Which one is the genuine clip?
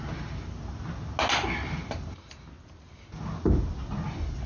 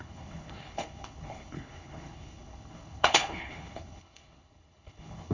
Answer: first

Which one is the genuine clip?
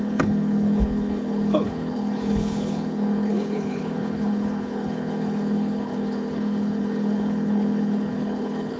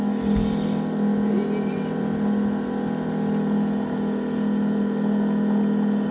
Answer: second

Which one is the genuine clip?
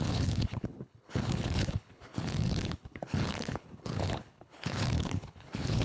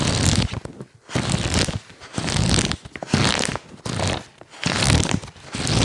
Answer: second